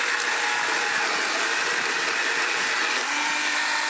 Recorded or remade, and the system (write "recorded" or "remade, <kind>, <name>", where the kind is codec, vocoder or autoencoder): recorded